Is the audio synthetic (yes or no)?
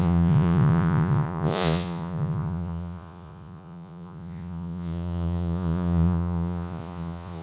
yes